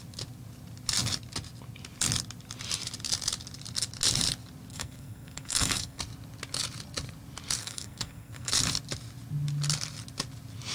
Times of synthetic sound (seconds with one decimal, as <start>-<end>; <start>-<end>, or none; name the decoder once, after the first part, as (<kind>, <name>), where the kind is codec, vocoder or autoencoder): 4.7-6.0 (codec, SNAC); 7.6-8.5